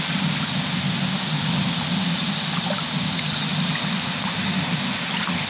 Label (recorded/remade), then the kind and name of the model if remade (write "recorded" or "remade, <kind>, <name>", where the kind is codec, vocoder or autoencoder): recorded